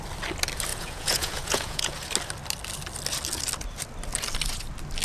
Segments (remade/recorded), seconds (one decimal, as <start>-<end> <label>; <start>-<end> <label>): 0.0-0.7 recorded; 0.7-2.1 remade; 2.1-5.0 recorded